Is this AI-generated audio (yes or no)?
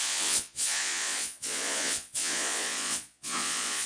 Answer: yes